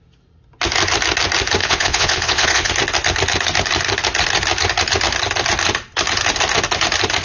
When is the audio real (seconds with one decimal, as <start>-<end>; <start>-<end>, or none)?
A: 0.0-1.6; 2.7-7.2